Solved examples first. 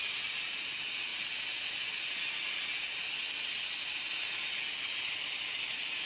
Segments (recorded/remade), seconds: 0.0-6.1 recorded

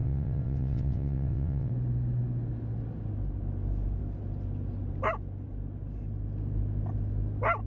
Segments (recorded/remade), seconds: 0.0-1.7 remade; 1.7-7.7 recorded

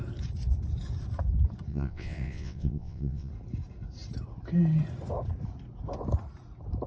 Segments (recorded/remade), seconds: 0.0-1.7 recorded; 1.7-3.3 remade; 3.3-6.9 recorded